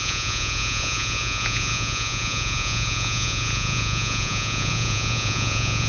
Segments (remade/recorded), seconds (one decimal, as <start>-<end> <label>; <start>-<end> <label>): 0.0-5.9 remade